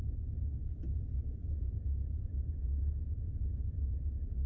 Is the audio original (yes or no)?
no